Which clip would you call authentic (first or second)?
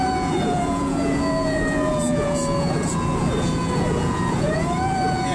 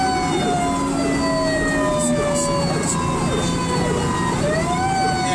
second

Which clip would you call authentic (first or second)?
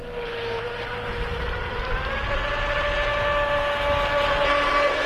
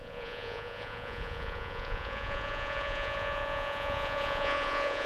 first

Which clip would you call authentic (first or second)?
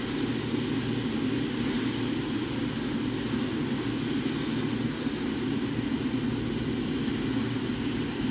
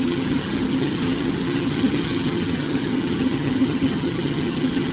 first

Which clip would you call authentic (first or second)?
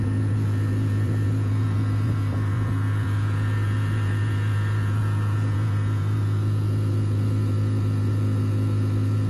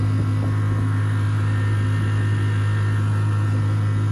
second